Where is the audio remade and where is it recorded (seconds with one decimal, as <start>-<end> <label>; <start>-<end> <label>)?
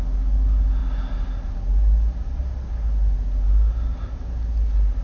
0.0-5.0 recorded